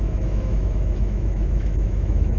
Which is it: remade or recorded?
remade